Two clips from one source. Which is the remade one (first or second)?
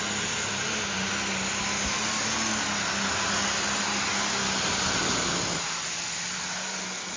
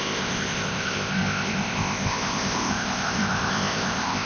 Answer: second